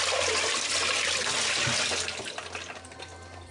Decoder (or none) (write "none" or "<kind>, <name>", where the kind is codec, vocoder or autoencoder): none